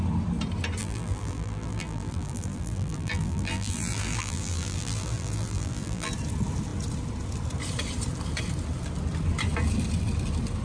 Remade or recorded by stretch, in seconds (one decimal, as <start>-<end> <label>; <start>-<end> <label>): 0.0-0.8 recorded; 0.8-6.1 remade; 6.1-10.6 recorded